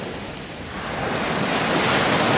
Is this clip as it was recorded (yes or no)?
yes